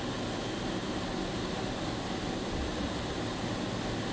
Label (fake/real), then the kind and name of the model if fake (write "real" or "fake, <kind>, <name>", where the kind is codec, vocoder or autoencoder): fake, vocoder, BigVGAN v2